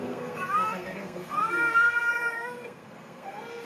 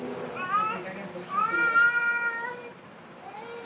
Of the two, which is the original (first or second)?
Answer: second